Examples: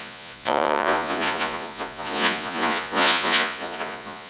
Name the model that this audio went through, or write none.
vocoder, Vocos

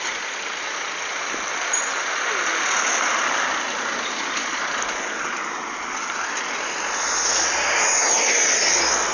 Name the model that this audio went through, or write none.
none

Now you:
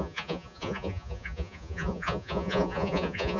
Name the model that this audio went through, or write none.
vocoder, Vocos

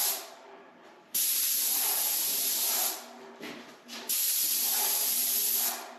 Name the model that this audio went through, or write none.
vocoder, BigVGAN v2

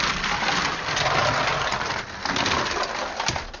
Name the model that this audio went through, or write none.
none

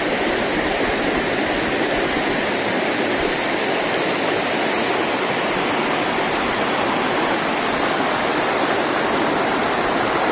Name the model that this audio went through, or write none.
none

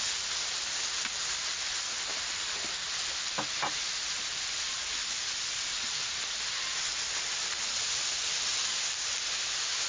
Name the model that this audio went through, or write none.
none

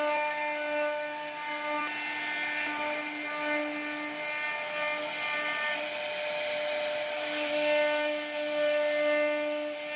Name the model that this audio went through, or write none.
none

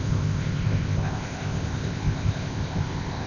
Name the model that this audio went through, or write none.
codec, ZipCodec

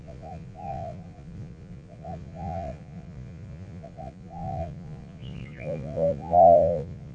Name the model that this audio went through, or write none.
vocoder, Vocos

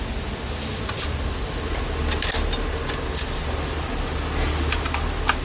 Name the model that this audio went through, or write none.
none